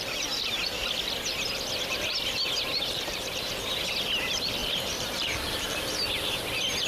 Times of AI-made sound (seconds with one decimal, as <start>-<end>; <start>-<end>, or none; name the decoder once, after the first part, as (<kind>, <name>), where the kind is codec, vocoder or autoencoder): 2.7-3.7 (vocoder, BigVGAN v2); 4.6-6.1